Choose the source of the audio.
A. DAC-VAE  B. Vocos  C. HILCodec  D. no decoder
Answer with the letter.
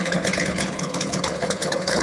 C